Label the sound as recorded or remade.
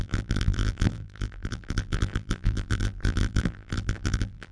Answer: remade